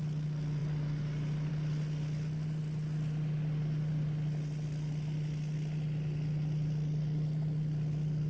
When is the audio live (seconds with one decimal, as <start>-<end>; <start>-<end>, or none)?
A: 0.0-8.3